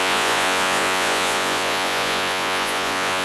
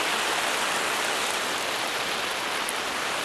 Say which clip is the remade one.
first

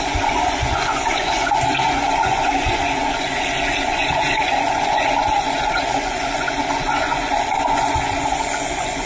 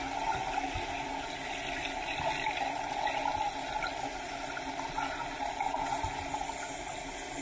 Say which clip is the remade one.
first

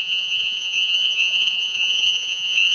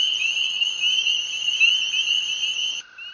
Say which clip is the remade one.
first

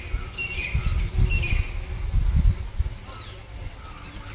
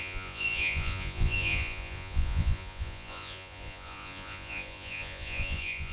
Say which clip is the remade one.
second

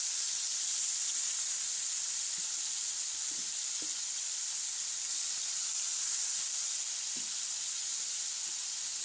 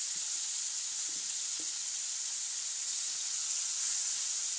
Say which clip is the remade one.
second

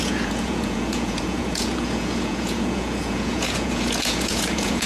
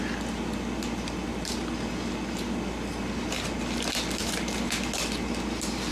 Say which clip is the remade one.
first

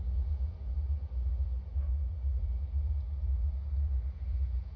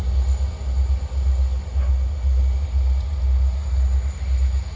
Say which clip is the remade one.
first